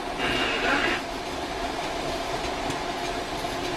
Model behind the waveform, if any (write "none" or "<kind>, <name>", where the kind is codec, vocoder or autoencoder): none